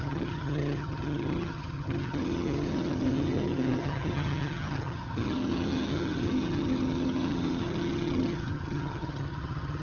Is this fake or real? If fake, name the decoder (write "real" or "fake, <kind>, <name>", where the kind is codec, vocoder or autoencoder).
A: fake, vocoder, HiFi-GAN